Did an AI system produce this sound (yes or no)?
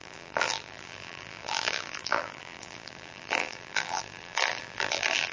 yes